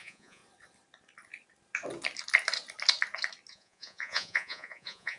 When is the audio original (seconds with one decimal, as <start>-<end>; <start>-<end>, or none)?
0.4-3.5